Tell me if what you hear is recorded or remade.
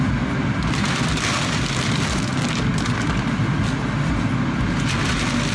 recorded